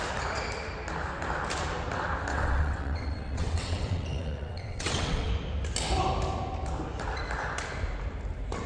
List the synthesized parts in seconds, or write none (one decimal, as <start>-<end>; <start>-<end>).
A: 2.3-5.3

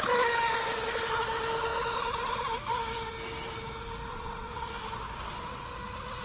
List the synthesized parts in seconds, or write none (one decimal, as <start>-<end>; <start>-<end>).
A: 4.1-4.7